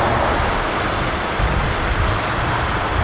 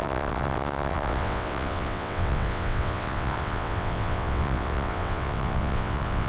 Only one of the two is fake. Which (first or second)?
second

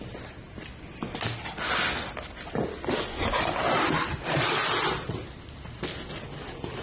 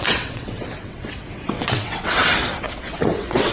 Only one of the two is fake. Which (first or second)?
second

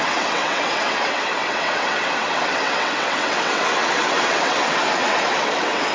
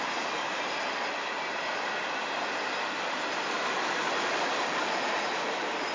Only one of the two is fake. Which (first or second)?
first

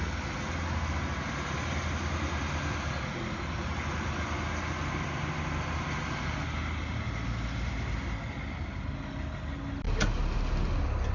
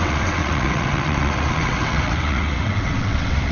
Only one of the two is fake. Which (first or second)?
second